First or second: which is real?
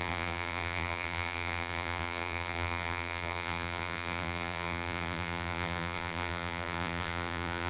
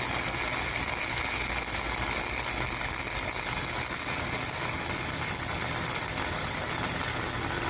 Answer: second